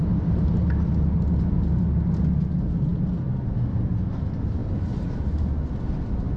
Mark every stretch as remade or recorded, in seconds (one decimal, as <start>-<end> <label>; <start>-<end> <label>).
0.0-4.6 recorded; 4.6-5.2 remade; 5.2-6.4 recorded